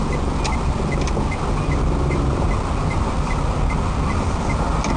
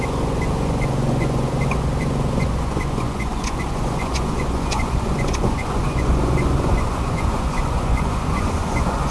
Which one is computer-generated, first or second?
second